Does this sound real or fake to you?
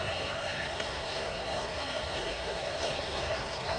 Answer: fake